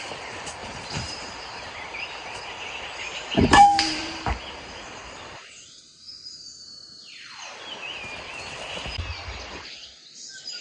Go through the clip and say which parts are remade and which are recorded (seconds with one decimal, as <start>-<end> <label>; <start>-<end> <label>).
0.0-0.6 recorded; 0.6-4.9 remade; 4.9-10.6 recorded